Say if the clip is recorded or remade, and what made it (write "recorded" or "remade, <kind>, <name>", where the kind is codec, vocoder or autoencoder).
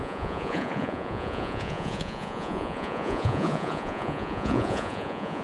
remade, vocoder, Vocos